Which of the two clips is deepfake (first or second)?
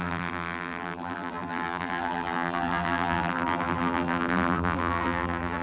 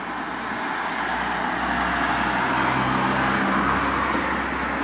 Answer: first